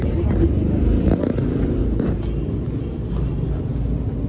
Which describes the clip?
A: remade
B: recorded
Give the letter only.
B